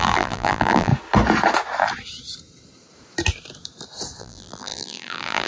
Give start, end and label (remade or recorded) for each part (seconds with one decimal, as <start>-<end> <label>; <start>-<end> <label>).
0.0-0.9 remade; 0.9-4.2 recorded; 4.2-5.5 remade